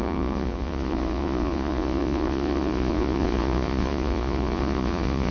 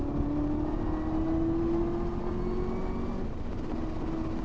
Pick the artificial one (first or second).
first